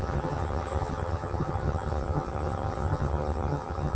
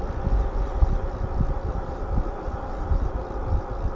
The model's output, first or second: first